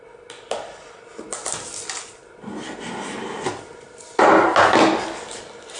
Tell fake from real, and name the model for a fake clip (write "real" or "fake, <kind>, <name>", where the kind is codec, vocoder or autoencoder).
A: real